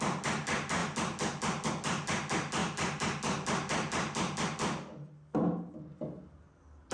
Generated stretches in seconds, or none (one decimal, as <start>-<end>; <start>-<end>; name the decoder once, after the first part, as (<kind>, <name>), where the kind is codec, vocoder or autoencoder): none